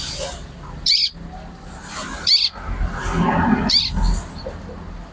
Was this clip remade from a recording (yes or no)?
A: no